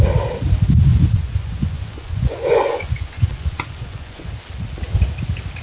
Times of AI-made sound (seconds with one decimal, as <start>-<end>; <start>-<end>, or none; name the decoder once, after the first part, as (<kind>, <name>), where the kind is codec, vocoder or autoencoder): 0.9-4.3 (vocoder, Vocos)